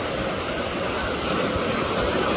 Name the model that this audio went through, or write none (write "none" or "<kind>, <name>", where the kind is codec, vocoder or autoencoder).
none